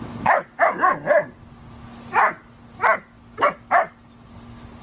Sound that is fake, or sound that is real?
real